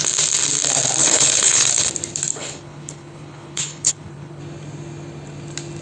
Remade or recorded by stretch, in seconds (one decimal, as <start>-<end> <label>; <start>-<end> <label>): 0.0-1.0 recorded; 1.0-1.7 remade; 1.7-2.3 recorded; 2.3-4.4 remade; 4.4-5.8 recorded